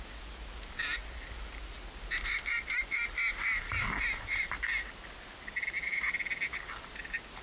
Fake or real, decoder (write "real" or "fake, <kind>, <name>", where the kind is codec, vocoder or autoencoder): real